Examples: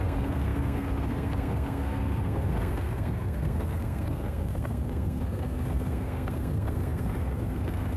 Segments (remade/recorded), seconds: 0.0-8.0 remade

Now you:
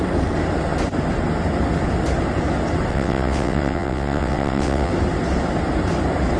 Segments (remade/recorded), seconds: 0.0-2.9 recorded; 2.9-4.9 remade; 4.9-6.4 recorded